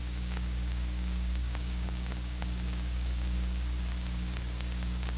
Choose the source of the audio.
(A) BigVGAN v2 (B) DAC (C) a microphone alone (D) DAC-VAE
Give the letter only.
B